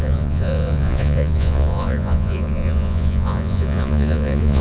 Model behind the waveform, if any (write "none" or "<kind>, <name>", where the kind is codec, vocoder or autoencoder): vocoder, Vocos